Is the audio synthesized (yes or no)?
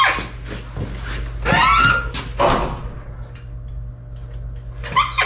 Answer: no